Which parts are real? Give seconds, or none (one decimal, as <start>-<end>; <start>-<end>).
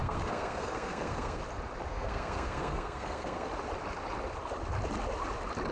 1.4-1.9; 3.5-5.7